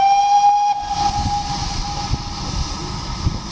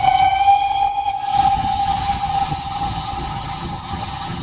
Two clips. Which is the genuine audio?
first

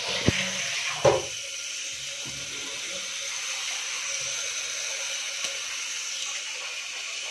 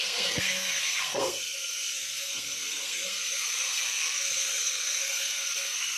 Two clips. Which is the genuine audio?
first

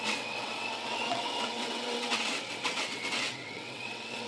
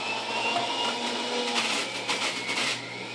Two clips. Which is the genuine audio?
second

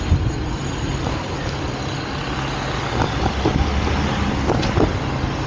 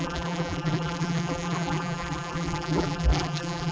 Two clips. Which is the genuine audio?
first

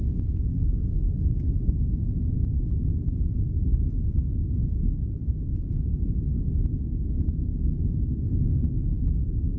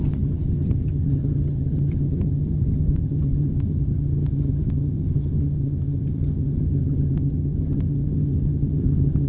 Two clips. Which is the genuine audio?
first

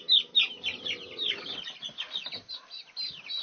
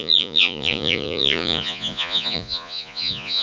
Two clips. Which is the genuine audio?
first